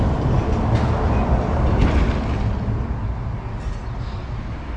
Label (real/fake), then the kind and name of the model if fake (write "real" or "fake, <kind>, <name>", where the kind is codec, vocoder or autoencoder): real